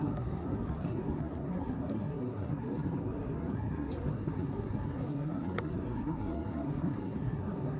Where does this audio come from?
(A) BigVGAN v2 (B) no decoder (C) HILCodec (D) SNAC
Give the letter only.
D